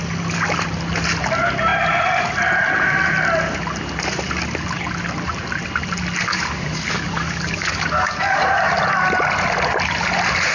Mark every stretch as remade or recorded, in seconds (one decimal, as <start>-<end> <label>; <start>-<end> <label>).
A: 0.0-6.3 recorded; 6.3-8.7 remade; 8.7-10.5 recorded